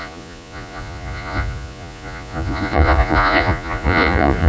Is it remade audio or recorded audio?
remade